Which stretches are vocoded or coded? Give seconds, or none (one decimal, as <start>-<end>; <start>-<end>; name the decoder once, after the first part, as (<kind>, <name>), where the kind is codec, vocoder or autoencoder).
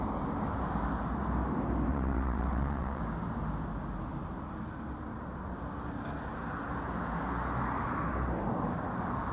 1.9-3.0 (vocoder, WaveNeXt)